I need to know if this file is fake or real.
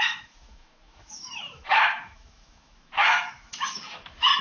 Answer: fake